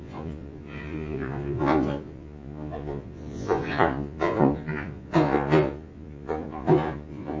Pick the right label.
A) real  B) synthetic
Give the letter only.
B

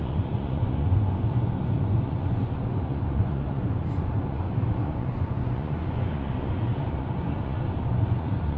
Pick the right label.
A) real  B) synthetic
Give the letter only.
B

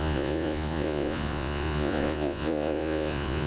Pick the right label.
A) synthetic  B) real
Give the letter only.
A